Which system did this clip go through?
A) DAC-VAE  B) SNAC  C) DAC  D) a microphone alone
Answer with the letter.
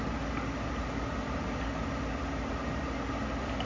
D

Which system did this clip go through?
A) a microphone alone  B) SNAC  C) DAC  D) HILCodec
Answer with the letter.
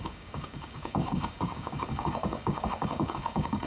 C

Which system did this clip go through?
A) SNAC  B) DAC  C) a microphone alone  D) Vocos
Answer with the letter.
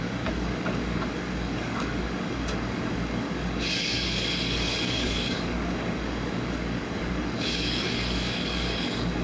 B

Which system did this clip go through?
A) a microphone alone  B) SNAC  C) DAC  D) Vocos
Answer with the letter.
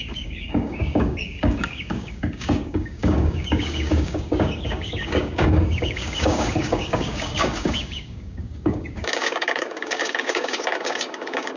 C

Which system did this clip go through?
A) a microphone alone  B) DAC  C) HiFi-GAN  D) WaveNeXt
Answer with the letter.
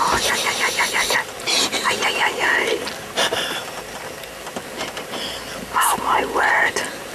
A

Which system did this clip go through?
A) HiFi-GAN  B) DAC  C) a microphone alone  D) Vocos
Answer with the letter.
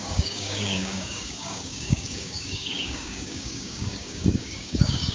B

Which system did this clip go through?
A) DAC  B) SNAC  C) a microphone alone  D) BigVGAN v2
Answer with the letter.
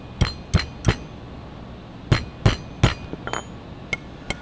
C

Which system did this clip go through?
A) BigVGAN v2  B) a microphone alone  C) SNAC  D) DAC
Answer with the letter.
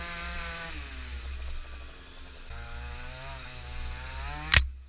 B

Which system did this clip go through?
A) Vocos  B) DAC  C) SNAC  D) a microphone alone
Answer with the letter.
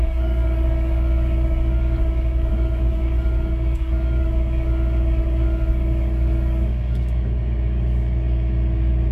B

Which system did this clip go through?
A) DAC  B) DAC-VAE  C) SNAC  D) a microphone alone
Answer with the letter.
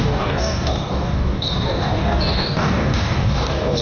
A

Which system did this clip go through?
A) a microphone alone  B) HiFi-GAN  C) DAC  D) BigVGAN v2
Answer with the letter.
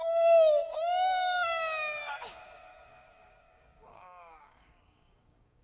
C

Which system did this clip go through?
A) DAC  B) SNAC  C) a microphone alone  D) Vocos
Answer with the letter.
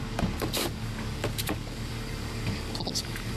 A